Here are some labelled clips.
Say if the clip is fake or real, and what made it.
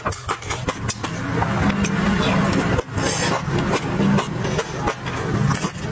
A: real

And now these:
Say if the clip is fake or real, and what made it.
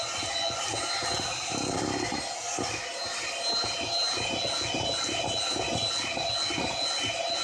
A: real